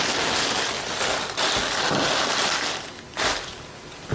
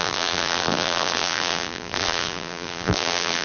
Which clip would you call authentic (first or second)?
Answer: first